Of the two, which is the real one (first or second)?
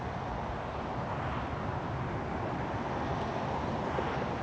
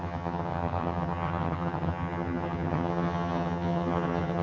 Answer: first